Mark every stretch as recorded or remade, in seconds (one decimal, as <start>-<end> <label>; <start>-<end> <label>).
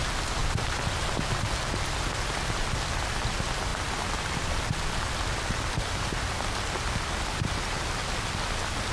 0.0-8.9 recorded